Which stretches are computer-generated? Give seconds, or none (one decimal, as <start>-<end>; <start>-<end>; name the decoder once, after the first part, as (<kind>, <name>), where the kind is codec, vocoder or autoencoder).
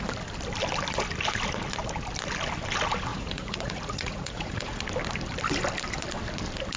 3.1-4.8 (vocoder, Vocos)